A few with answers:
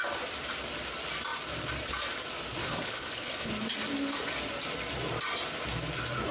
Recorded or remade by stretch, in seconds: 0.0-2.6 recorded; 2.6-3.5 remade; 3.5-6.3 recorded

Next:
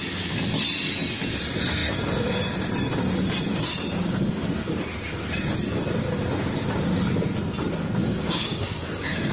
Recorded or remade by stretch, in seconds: 0.0-8.0 recorded; 8.0-9.3 remade

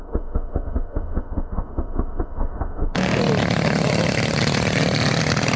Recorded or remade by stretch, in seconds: 0.0-3.2 remade; 3.2-5.6 recorded

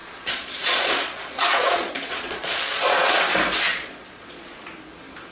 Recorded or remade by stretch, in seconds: 0.0-3.2 remade; 3.2-3.7 recorded; 3.7-4.6 remade; 4.6-5.3 recorded